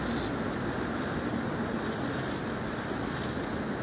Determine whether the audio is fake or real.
real